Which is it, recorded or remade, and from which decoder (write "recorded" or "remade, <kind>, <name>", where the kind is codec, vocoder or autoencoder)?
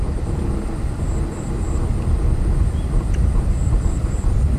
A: recorded